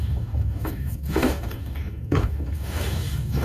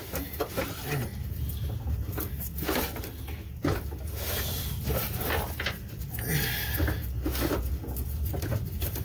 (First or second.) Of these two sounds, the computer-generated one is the first